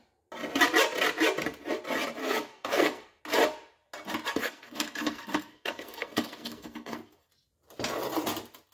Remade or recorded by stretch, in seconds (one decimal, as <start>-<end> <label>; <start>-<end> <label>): 0.0-2.2 recorded; 2.2-3.2 remade; 3.2-4.3 recorded; 4.3-7.3 remade; 7.3-8.7 recorded